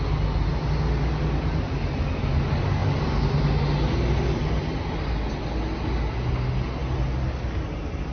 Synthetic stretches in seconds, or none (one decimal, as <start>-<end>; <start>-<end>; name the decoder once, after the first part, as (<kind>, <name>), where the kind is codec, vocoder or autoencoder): none